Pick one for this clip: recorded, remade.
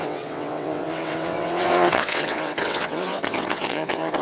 remade